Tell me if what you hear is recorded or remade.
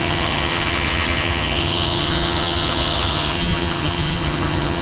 remade